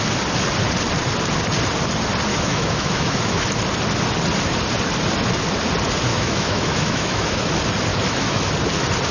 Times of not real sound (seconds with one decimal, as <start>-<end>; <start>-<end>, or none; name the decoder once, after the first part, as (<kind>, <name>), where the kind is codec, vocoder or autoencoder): 2.3-3.4 (autoencoder, DAC-VAE); 6.1-7.5; 7.9-8.5